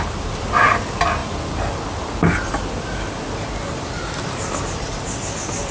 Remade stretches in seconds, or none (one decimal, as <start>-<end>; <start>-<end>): none